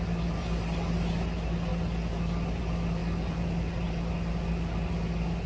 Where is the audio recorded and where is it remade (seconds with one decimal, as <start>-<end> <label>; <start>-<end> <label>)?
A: 0.0-5.5 recorded